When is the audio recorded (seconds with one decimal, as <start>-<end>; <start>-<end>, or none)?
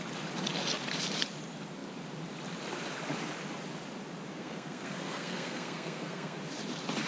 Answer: 0.0-4.3; 6.4-7.1